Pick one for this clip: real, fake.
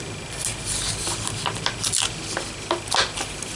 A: real